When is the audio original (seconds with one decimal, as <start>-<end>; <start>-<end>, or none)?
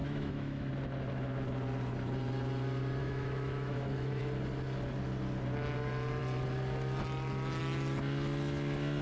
0.7-3.0; 4.2-9.0